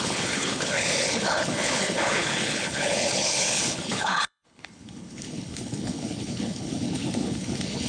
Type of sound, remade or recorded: remade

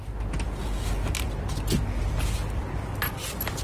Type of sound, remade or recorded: recorded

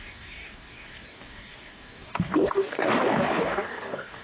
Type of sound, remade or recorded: remade